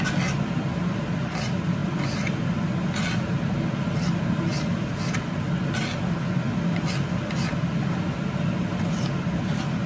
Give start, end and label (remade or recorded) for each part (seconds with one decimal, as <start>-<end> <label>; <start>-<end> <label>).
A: 0.0-9.9 recorded